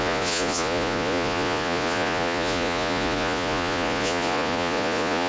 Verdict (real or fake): fake